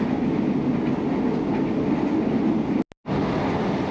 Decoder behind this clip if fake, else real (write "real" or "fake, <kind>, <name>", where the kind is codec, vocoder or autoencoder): real